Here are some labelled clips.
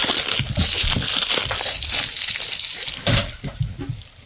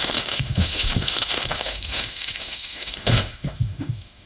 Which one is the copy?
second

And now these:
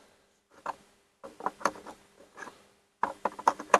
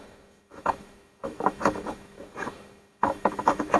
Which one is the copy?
second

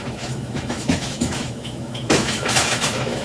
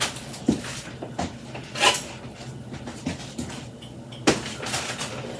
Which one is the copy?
first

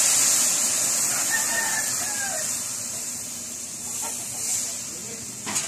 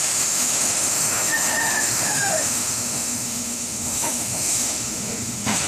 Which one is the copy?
second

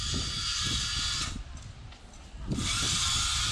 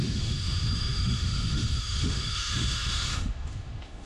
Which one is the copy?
second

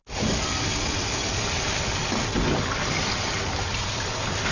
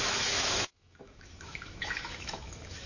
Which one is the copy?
second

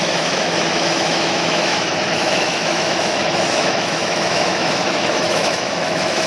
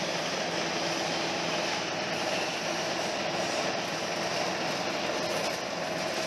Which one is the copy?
first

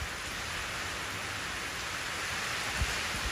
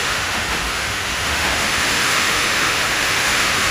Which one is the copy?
second